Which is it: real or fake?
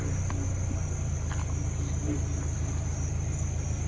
real